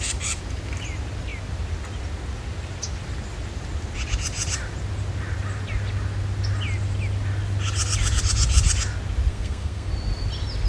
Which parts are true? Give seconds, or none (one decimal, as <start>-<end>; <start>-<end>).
0.0-9.3; 9.9-10.7